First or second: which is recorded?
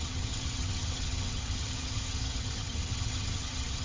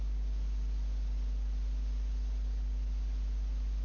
second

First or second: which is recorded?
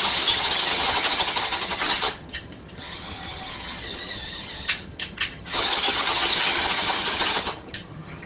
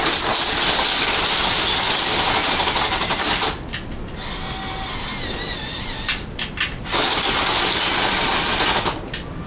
second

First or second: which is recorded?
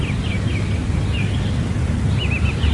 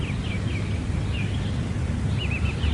first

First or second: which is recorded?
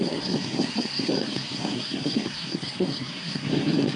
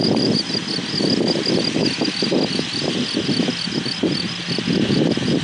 second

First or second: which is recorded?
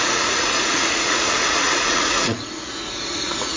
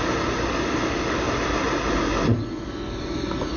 second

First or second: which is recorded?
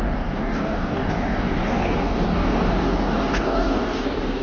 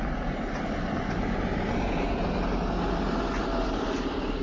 second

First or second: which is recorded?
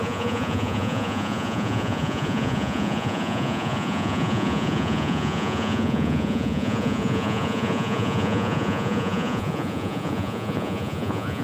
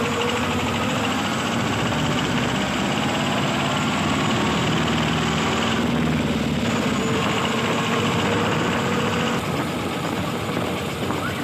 second